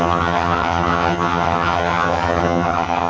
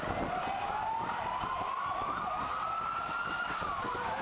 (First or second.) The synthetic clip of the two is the first